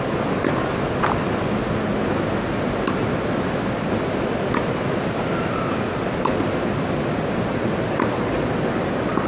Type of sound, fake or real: real